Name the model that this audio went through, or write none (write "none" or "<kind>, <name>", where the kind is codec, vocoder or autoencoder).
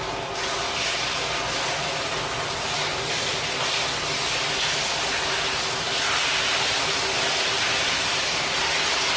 none